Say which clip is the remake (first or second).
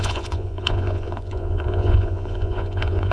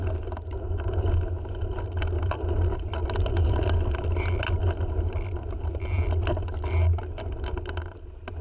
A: first